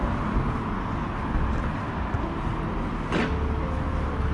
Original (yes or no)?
yes